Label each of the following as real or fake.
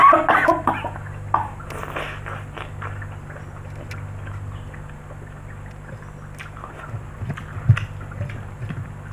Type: real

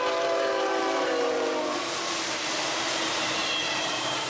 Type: fake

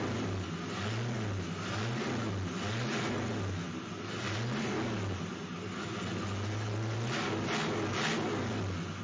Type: real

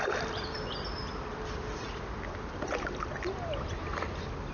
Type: fake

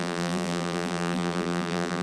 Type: fake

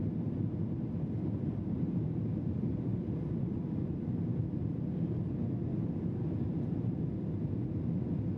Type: fake